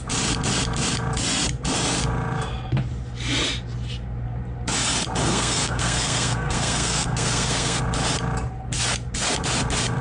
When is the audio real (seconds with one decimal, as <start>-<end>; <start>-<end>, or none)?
0.0-5.3; 7.8-10.0